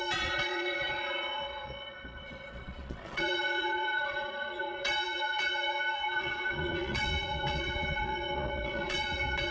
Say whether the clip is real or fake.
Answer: fake